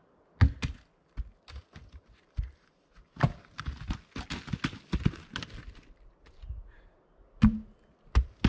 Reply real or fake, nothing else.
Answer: real